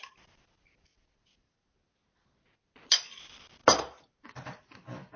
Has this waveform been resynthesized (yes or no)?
no